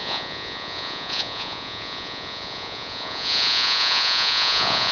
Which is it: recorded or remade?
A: remade